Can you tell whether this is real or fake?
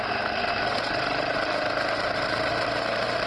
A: real